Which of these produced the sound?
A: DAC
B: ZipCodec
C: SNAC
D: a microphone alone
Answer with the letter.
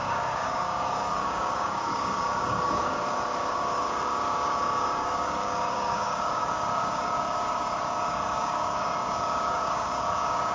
A